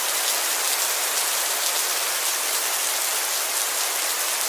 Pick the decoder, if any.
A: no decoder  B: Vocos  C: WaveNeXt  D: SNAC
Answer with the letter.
A